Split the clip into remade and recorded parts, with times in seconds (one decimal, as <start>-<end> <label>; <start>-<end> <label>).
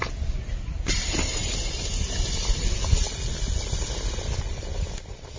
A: 0.0-5.4 recorded